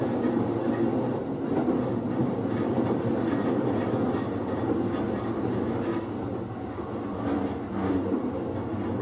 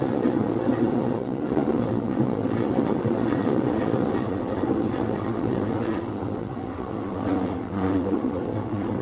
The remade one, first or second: second